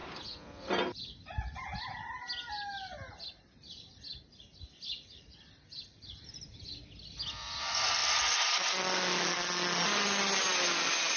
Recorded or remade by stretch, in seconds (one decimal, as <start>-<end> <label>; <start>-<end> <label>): 0.0-11.2 recorded